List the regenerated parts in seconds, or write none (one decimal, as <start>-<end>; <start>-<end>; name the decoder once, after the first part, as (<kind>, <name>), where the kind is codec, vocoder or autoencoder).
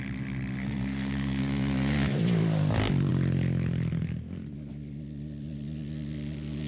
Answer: 0.6-1.4 (codec, SNAC)